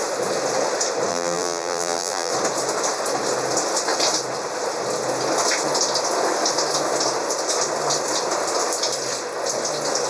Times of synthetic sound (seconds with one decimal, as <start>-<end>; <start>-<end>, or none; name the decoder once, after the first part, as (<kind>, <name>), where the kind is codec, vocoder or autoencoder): 1.1-2.3 (vocoder, BigVGAN v2)